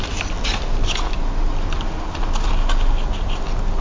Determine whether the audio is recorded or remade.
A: recorded